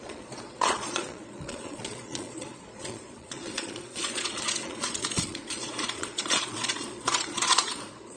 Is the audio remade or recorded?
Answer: remade